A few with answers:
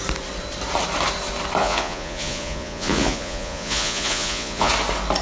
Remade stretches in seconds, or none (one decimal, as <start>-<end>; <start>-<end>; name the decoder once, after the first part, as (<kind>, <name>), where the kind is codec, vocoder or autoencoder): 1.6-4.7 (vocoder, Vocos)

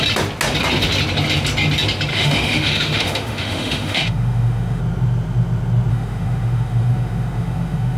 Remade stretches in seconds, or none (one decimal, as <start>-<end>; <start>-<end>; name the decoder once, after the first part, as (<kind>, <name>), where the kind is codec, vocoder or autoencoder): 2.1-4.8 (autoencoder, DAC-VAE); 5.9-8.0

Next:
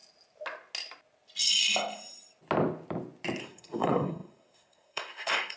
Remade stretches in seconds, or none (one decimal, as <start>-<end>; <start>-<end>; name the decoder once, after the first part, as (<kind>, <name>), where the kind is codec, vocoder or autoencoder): 3.4-5.6 (codec, SNAC)

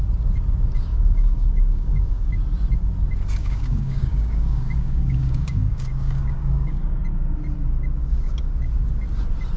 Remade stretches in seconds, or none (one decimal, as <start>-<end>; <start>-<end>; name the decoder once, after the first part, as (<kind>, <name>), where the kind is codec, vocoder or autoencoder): 0.9-2.3 (codec, DAC); 3.4-7.0; 8.0-8.5